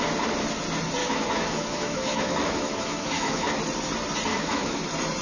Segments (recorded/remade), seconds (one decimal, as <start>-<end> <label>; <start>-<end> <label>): 0.0-1.0 recorded; 1.0-3.6 remade; 3.6-4.3 recorded; 4.3-4.8 remade; 4.8-5.2 recorded